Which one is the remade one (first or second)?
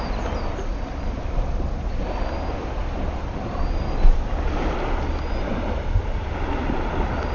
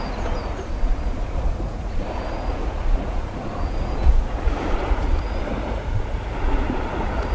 second